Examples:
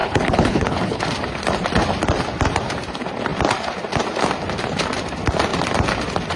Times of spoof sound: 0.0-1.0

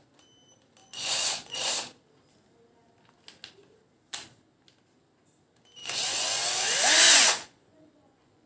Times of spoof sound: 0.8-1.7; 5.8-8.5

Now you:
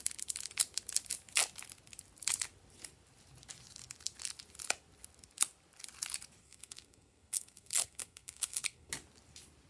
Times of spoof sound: 6.4-8.9

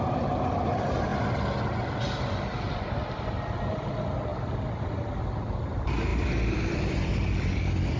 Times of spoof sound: 6.1-7.1